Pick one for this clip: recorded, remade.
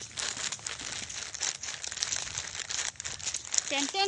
recorded